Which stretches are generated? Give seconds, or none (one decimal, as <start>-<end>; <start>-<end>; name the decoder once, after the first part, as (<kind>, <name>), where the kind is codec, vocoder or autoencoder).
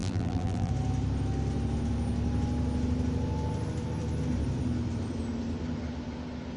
0.0-0.7 (vocoder, BigVGAN v2)